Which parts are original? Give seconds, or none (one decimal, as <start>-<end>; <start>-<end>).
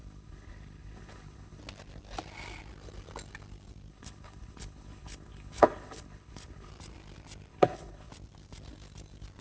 1.6-3.9; 6.7-7.5; 8.1-9.4